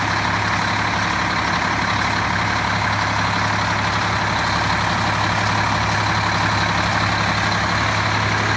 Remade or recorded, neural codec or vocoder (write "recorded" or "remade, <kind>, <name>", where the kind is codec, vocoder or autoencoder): recorded